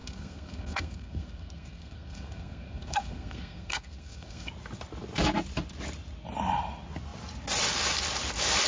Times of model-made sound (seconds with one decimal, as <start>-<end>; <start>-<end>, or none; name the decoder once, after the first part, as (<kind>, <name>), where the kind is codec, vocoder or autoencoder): 0.0-4.5 (codec, SNAC)